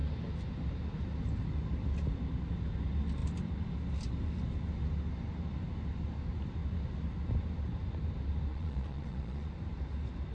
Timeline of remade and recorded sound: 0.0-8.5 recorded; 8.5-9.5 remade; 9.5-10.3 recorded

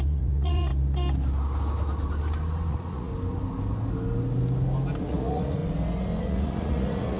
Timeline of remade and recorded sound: 0.0-0.7 remade; 0.7-2.7 recorded; 2.7-3.1 remade; 3.1-5.0 recorded; 5.0-5.6 remade; 5.6-6.2 recorded; 6.2-7.2 remade

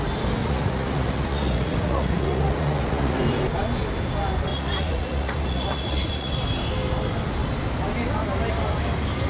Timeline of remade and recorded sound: 0.0-0.4 recorded; 0.4-3.2 remade; 3.2-4.5 recorded; 4.5-6.3 remade; 6.3-9.3 recorded